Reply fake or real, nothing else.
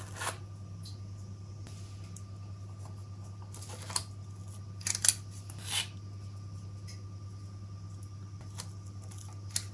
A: real